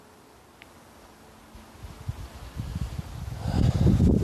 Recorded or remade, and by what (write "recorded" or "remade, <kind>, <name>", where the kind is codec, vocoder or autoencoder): recorded